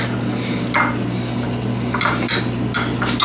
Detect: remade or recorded recorded